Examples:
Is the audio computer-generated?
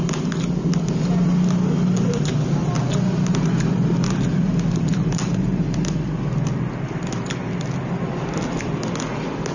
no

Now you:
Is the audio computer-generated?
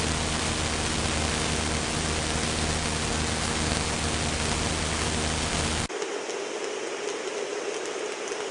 no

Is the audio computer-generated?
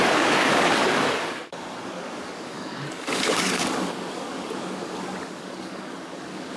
yes